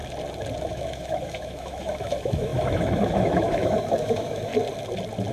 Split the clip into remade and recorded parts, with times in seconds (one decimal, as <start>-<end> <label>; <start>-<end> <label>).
0.0-0.6 recorded; 0.6-4.5 remade; 4.5-5.3 recorded